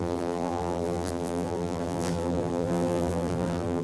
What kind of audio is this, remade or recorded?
remade